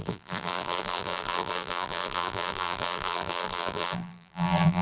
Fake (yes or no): yes